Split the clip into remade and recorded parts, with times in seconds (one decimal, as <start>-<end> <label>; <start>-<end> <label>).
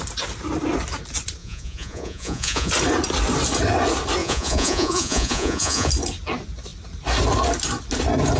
0.0-1.4 recorded; 1.4-2.7 remade; 2.7-4.2 recorded; 4.2-5.9 remade; 5.9-8.4 recorded